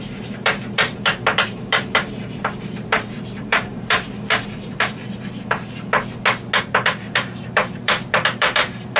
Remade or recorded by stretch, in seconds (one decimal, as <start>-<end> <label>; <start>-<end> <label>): 0.0-5.0 remade; 5.0-6.6 recorded; 6.6-9.0 remade